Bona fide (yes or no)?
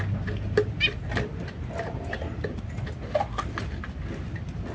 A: yes